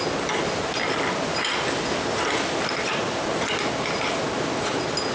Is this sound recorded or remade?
recorded